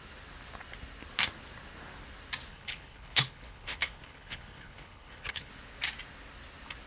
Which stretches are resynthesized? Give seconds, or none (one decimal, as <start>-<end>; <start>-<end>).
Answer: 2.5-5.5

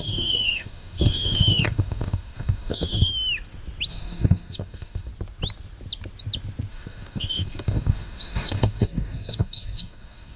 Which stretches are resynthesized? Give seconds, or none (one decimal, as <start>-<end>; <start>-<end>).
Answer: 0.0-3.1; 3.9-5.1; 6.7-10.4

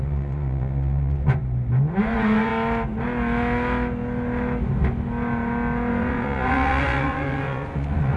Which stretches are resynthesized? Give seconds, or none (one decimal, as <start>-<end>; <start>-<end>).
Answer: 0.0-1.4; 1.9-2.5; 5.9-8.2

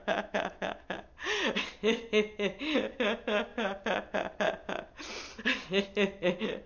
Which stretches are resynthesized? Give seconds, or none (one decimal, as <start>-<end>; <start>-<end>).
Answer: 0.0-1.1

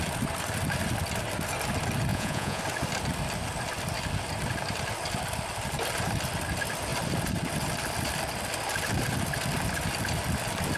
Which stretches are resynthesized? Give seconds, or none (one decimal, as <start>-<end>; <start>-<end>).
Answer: 2.1-2.6

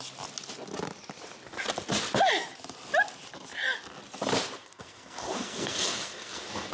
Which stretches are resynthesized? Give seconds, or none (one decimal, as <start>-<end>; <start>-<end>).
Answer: 4.6-6.7